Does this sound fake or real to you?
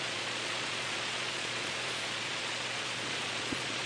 fake